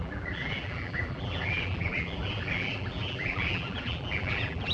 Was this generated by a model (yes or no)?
yes